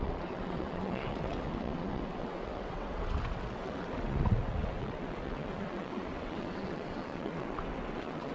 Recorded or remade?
remade